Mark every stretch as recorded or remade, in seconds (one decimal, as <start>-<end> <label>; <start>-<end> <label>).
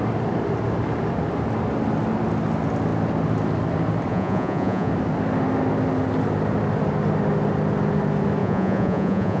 0.0-4.1 recorded; 4.1-4.9 remade; 4.9-8.4 recorded; 8.4-9.4 remade